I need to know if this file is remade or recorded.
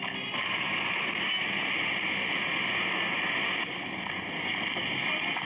recorded